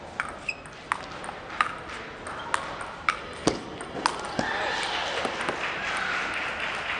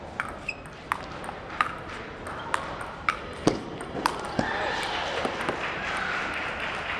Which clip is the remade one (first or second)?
second